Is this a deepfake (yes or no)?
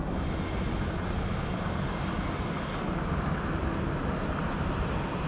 no